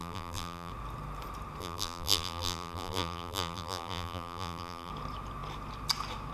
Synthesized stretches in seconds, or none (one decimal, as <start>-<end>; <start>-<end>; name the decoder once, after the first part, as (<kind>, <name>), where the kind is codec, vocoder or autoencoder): 0.0-0.7 (vocoder, BigVGAN v2); 1.6-4.9